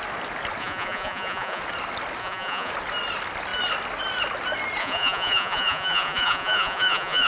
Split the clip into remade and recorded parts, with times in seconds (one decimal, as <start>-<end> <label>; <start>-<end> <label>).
0.0-0.6 recorded; 0.6-1.6 remade; 1.6-2.2 recorded; 2.2-2.7 remade; 2.7-4.8 recorded; 4.8-7.3 remade